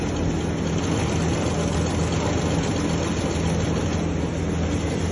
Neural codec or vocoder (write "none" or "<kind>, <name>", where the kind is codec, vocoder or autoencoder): none